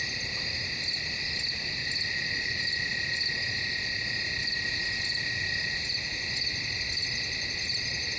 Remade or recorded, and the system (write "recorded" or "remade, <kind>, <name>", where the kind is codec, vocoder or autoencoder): recorded